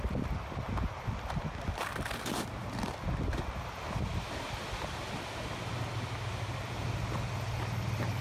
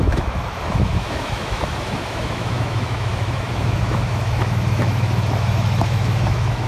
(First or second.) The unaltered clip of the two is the first